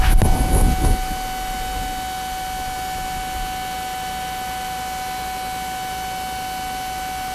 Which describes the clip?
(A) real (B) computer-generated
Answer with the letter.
A